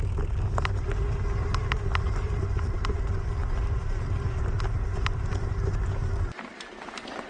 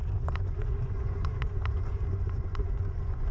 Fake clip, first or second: second